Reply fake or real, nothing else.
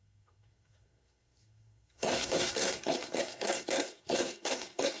fake